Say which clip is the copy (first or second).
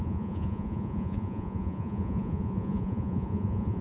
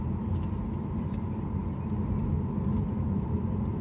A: first